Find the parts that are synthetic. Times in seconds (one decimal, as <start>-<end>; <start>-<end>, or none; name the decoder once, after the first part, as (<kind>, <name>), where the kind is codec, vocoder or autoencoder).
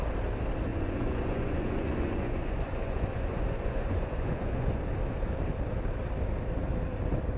0.7-4.8 (vocoder, Vocos)